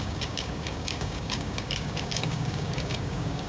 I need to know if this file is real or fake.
fake